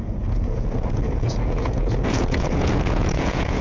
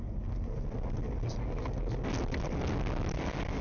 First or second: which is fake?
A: first